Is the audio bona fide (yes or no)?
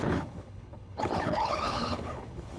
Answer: no